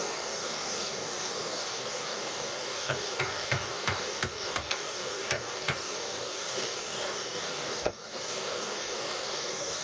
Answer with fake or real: fake